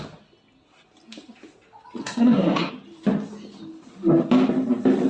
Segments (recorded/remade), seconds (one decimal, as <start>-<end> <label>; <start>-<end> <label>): 0.0-2.0 recorded; 2.0-2.7 remade; 2.7-5.1 recorded